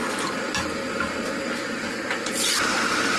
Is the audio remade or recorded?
recorded